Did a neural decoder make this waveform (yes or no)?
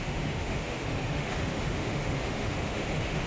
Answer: yes